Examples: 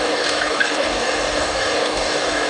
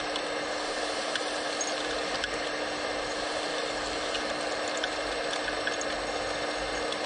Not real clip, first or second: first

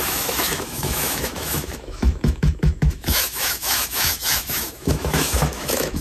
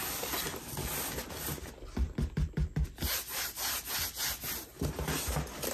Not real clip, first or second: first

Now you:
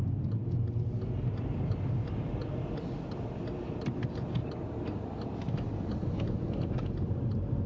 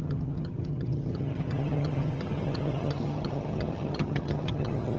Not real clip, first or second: second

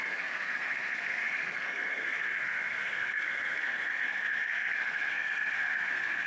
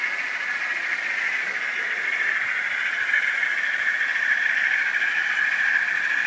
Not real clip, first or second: first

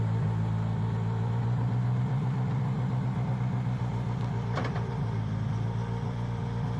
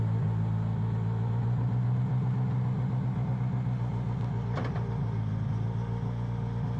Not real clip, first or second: first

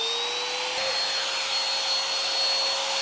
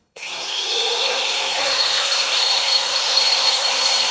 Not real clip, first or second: second